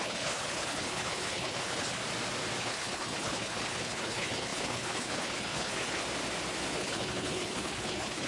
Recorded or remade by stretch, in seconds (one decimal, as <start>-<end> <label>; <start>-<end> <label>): 0.0-2.0 remade; 2.0-2.6 recorded; 2.6-6.0 remade; 6.0-6.7 recorded; 6.7-8.3 remade